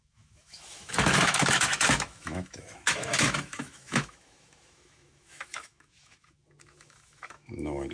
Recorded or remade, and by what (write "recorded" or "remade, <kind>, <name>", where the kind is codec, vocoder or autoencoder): remade, autoencoder, DAC-VAE